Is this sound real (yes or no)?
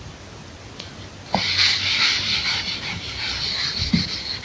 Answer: yes